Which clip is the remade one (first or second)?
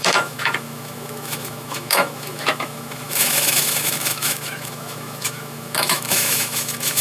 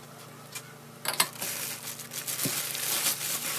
first